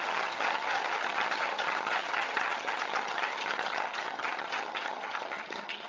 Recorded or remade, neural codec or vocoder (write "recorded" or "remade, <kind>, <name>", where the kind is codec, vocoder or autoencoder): remade, vocoder, HiFi-GAN